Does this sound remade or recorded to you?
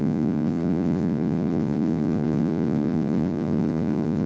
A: remade